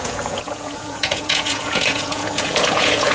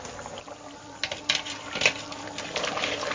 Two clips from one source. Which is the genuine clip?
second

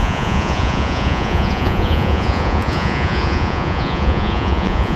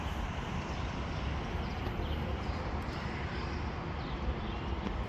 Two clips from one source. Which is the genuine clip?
second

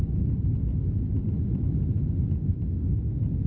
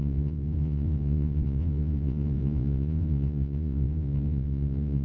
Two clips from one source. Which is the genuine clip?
first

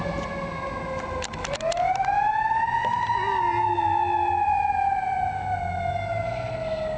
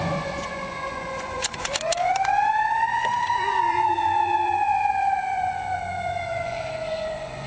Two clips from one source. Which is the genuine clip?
first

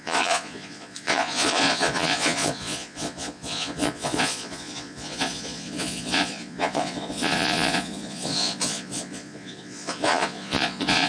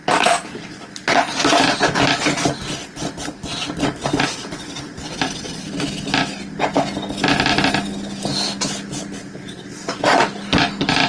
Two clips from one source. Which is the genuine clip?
second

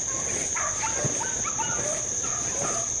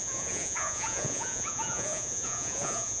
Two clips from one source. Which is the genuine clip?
first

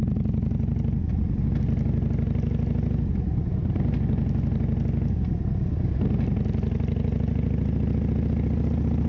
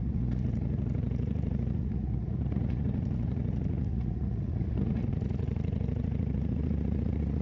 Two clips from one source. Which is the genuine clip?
first